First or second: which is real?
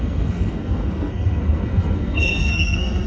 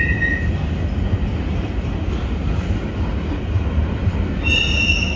second